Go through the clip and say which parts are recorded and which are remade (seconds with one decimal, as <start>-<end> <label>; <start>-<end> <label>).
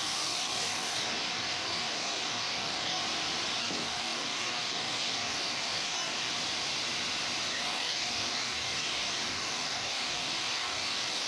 0.0-3.0 remade; 3.0-3.6 recorded; 3.6-6.3 remade; 6.3-7.5 recorded; 7.5-11.3 remade